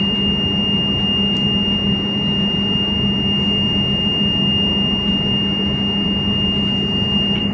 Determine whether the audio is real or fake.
real